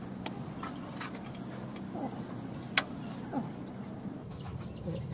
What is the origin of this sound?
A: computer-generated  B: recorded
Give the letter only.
B